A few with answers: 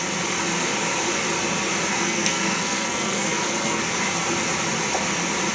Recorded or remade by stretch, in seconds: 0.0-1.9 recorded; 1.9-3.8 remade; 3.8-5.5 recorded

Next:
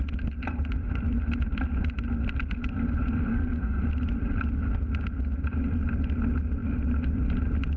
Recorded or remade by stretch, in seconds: 0.0-3.3 recorded; 3.3-3.8 remade; 3.8-7.8 recorded